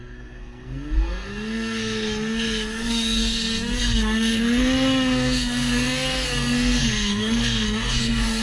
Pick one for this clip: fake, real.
fake